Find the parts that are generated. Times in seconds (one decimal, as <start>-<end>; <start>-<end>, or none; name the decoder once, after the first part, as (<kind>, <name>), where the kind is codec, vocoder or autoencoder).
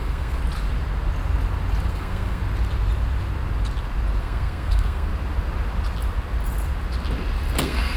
0.0-0.4 (codec, SNAC); 1.9-2.4; 4.2-5.1; 7.6-8.0